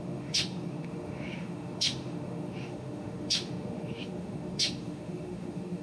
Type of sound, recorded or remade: remade